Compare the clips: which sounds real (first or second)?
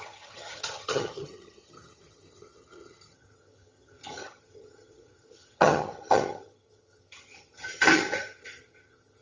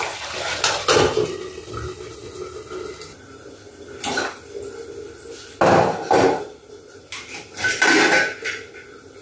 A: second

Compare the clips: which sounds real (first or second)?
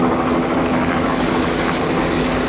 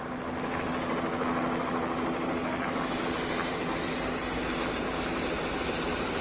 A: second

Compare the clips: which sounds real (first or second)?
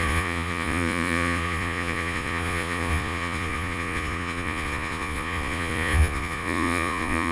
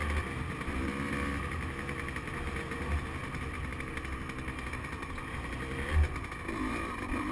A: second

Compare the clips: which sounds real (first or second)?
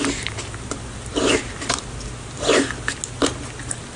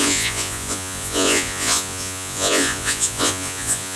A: first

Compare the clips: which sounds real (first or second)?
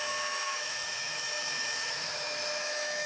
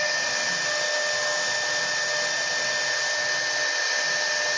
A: second